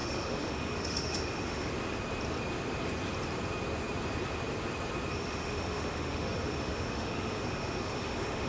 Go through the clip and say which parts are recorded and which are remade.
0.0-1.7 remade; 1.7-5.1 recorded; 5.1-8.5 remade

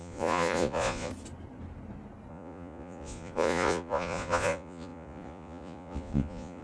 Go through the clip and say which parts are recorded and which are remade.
0.0-1.1 remade; 1.1-2.3 recorded; 2.3-6.6 remade

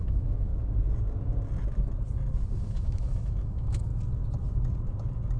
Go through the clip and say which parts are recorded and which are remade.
0.0-0.5 remade; 0.5-2.6 recorded; 2.6-3.9 remade; 3.9-5.4 recorded

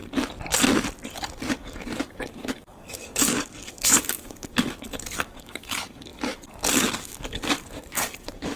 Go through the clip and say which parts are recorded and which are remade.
0.0-1.5 recorded; 1.5-8.6 remade

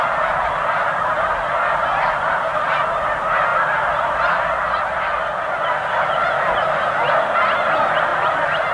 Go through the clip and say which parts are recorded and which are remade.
0.0-8.7 recorded

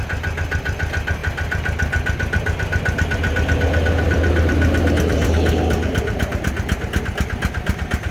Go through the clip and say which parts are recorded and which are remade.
0.0-8.1 recorded

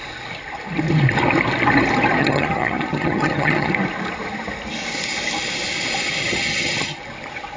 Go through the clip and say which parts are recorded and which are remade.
0.0-2.2 recorded; 2.2-3.7 remade; 3.7-6.2 recorded; 6.2-7.0 remade; 7.0-7.6 recorded

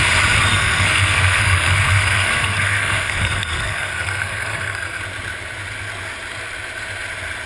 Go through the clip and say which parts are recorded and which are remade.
0.0-0.5 recorded; 0.5-5.0 remade; 5.0-7.5 recorded